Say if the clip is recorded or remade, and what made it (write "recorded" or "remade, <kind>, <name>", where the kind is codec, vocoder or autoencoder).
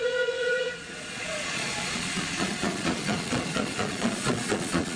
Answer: remade, vocoder, Vocos